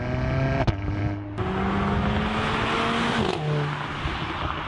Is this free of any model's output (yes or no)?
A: yes